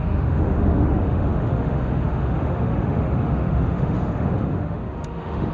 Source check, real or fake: fake